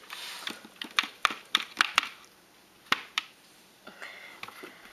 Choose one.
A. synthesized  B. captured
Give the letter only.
A